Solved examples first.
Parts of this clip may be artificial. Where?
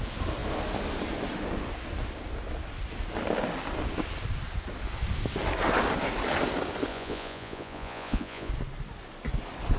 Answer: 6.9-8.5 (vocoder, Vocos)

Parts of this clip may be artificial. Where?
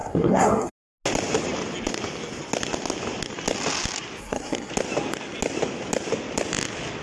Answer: 0.0-0.7 (codec, SNAC); 4.2-4.7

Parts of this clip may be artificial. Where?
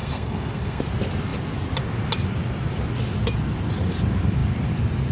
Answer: 0.0-0.8 (codec, SNAC)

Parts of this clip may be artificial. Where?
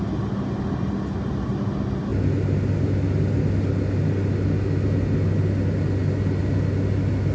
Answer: none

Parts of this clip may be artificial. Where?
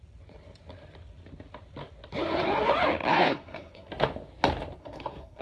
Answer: 3.1-3.9 (codec, SNAC); 4.8-5.4